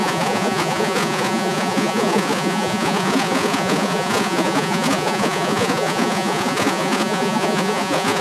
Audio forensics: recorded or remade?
remade